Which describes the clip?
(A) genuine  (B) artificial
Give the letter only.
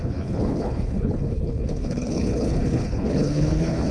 B